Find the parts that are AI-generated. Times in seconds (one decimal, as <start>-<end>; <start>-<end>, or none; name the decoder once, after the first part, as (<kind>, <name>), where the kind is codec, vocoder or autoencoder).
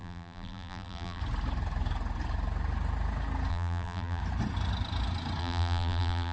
0.0-1.2 (vocoder, BigVGAN v2); 3.5-4.2; 5.4-6.3